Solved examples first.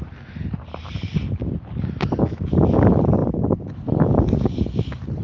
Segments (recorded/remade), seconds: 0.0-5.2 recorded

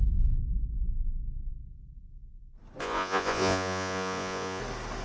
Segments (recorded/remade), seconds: 0.0-2.8 recorded; 2.8-4.6 remade; 4.6-5.0 recorded

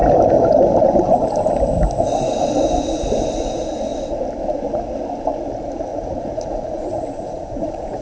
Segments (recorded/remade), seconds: 0.0-5.9 recorded; 5.9-8.0 remade

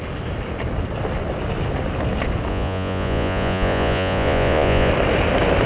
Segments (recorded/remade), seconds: 0.0-2.5 recorded; 2.5-4.9 remade; 4.9-5.7 recorded

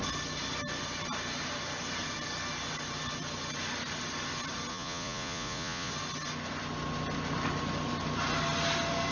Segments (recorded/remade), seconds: 0.0-4.7 recorded; 4.7-5.9 remade; 5.9-9.1 recorded

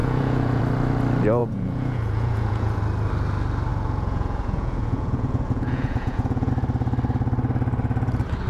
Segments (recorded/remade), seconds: 0.0-0.6 remade; 0.6-1.4 recorded; 1.4-2.8 remade; 2.8-3.7 recorded; 3.7-6.5 remade; 6.5-8.5 recorded

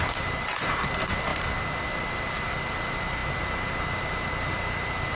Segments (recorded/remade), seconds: 0.0-5.1 recorded

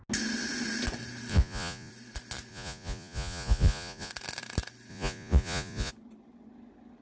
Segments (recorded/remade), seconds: 0.0-1.3 recorded; 1.3-1.9 remade; 1.9-2.5 recorded; 2.5-4.1 remade; 4.1-4.9 recorded; 4.9-5.9 remade; 5.9-7.0 recorded